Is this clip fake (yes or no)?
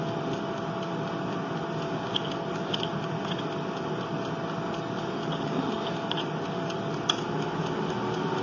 no